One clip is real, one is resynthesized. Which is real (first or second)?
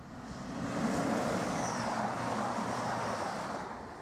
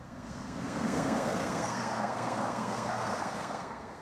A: first